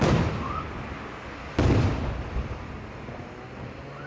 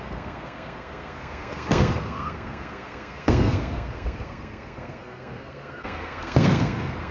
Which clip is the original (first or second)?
first